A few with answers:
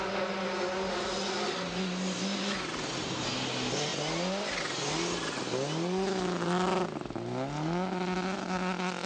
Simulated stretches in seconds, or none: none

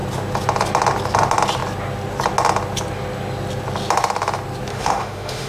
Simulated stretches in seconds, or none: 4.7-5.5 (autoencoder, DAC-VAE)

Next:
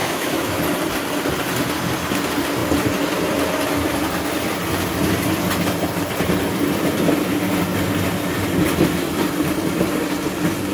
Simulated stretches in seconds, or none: 0.0-0.6 (autoencoder, DAC-VAE)